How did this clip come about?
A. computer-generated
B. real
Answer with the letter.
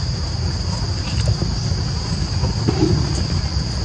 B